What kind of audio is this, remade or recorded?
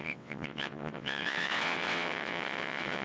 remade